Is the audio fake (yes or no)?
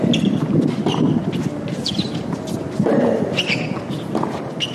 no